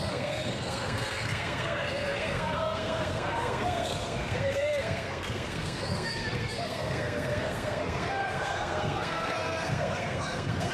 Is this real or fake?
fake